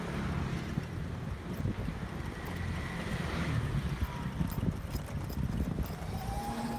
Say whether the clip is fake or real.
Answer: real